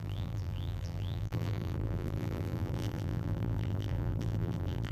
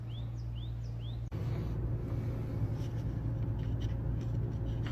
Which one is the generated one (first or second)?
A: first